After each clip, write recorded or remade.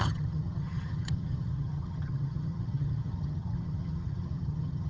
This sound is remade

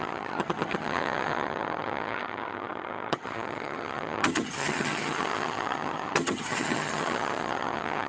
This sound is remade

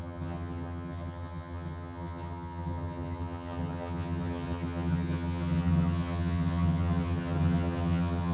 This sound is remade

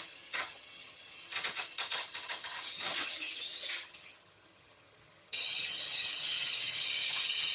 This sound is remade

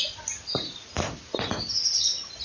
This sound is recorded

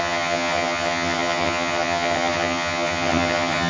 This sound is remade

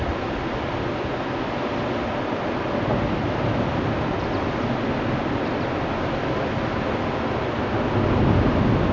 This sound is recorded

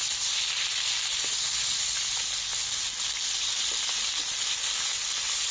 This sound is recorded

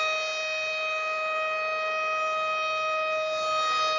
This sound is recorded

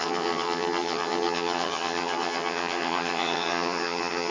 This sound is remade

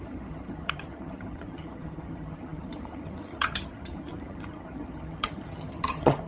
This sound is remade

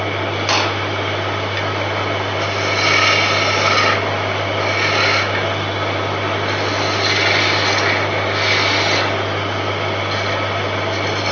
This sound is recorded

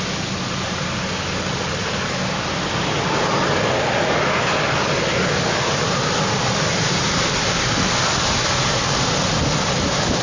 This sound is recorded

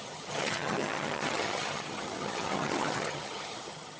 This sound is remade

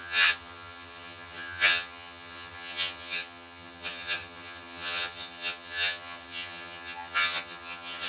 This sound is remade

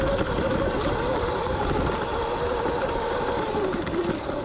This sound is recorded